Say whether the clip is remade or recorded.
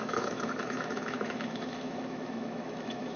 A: remade